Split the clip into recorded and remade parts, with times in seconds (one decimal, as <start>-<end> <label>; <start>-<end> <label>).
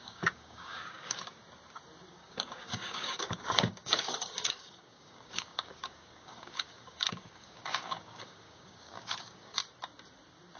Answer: 0.0-1.4 remade; 1.4-2.1 recorded; 2.1-9.6 remade; 9.6-10.6 recorded